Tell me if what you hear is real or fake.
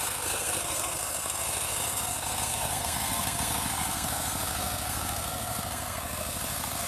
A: fake